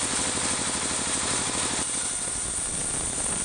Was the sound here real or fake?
real